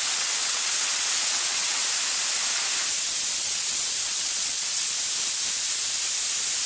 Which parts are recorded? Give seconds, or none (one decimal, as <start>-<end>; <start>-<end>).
1.8-3.4; 4.8-6.7